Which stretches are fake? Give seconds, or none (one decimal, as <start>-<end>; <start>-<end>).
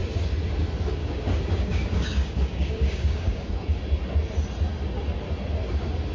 1.0-3.5